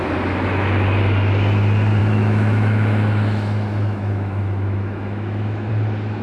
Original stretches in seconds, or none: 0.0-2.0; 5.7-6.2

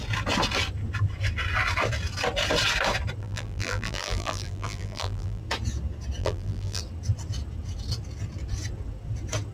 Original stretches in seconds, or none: 0.0-3.2; 5.4-6.2; 6.8-9.5

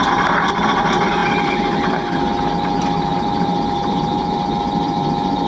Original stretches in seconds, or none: none

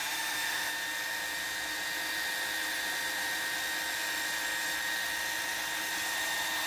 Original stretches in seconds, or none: 0.7-6.7